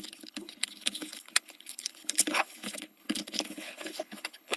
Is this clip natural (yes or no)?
no